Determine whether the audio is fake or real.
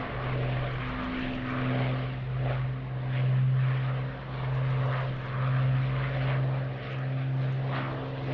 real